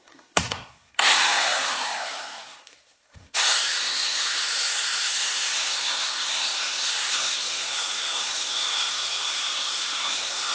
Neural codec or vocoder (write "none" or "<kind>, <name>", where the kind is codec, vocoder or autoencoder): codec, SNAC